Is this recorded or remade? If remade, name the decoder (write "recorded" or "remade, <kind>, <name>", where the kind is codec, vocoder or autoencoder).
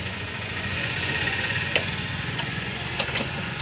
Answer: remade, vocoder, Vocos